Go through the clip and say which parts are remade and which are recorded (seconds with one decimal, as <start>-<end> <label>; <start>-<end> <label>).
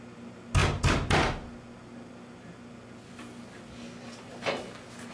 0.0-5.1 recorded